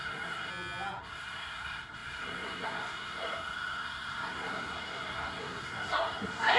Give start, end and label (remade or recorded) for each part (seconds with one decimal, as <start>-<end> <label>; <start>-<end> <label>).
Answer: 0.0-0.5 remade; 0.5-1.0 recorded; 1.0-6.6 remade